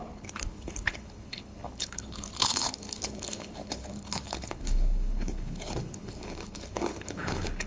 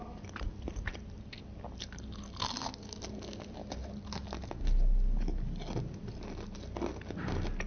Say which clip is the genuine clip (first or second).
second